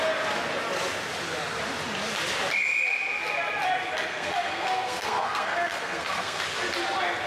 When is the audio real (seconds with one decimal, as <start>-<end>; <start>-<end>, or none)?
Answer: 0.0-4.1; 6.4-7.3